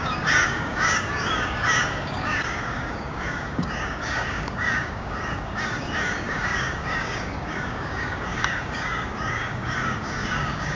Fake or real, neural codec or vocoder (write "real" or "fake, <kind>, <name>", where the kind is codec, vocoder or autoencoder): fake, codec, DAC